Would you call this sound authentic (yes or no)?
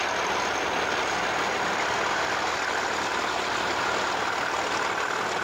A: yes